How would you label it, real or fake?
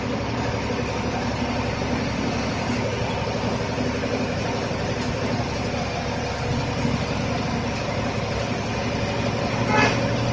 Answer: real